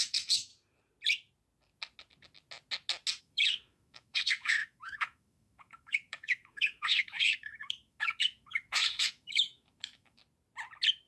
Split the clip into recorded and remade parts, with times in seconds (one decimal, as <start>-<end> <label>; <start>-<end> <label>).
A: 0.0-0.5 remade; 0.5-3.2 recorded; 3.2-10.2 remade; 10.2-11.1 recorded